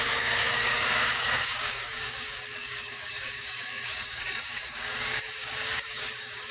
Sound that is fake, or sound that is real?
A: fake